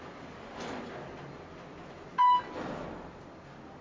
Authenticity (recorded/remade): recorded